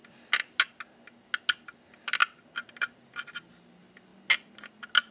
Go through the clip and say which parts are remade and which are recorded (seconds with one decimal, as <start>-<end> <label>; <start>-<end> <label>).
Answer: 0.0-5.1 recorded